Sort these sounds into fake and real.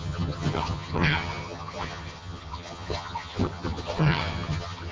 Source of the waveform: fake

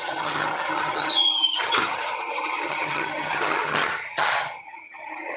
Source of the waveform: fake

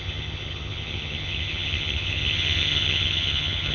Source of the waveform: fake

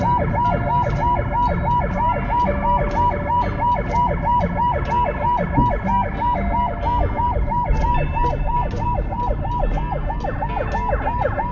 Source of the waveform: real